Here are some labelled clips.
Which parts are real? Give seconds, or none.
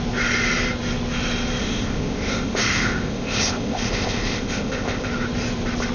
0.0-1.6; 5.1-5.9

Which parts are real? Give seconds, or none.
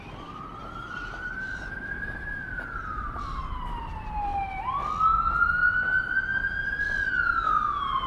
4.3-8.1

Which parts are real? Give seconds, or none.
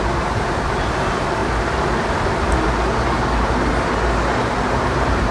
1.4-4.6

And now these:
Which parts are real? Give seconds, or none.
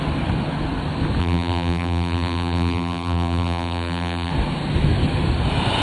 0.0-1.2; 4.3-5.8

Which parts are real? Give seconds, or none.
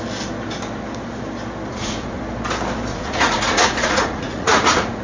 0.0-1.7; 2.2-2.9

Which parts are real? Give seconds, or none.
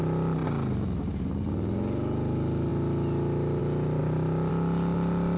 0.0-5.4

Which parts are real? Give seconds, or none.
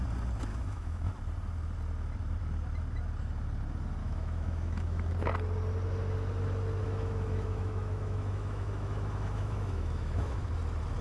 0.0-0.5; 1.1-4.0; 5.1-6.8; 10.5-11.0